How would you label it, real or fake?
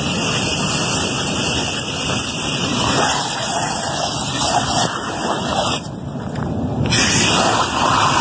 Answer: real